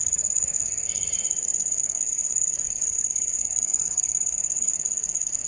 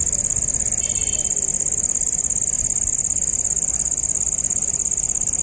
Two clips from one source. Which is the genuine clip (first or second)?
second